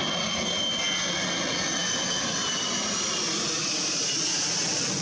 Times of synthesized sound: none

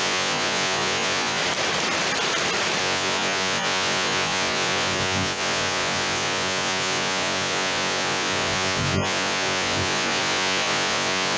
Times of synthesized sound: 0.0-1.4 (vocoder, Vocos); 2.8-11.4

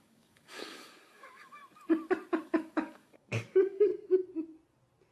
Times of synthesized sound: 0.0-1.6 (codec, DAC); 2.4-3.9

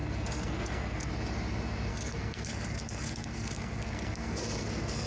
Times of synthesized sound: 0.0-1.1 (codec, SNAC); 1.9-5.1

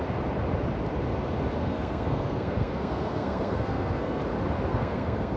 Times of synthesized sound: 1.6-4.2 (codec, SNAC); 4.7-5.4